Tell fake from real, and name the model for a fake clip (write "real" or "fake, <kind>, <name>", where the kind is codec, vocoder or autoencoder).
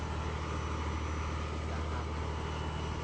real